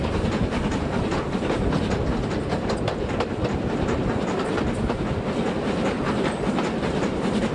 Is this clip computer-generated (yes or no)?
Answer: no